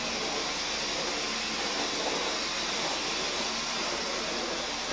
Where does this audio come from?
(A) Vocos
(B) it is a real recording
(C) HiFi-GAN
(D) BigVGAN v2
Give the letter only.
B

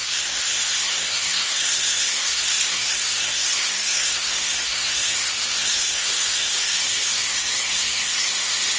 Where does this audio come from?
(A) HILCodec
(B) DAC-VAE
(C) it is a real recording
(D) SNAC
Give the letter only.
D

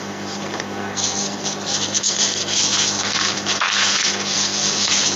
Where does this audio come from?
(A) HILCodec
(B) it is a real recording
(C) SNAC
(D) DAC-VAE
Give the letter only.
C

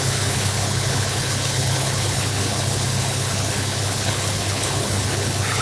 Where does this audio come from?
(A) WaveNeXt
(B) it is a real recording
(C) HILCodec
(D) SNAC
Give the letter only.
C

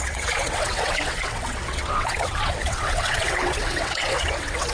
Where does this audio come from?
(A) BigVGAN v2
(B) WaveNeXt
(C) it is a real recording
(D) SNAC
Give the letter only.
B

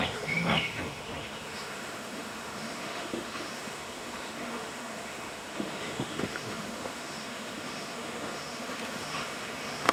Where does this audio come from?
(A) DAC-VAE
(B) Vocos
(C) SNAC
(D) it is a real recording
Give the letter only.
A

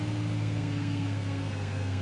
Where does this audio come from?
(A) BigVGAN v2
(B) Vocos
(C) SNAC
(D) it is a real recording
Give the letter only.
C